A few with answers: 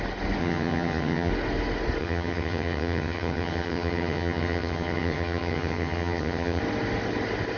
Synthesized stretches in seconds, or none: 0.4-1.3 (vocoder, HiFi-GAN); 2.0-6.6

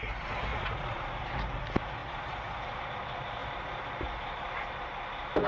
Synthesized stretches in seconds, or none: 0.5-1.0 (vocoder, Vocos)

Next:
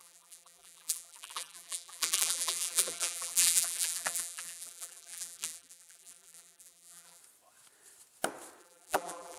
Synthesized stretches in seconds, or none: 0.0-7.2 (vocoder, BigVGAN v2); 8.6-9.4